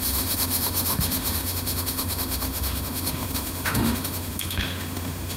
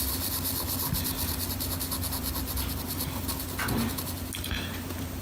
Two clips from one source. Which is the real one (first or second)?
second